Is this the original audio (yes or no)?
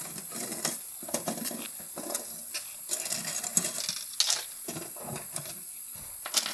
yes